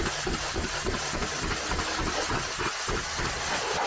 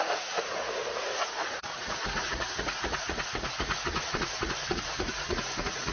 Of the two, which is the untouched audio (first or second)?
first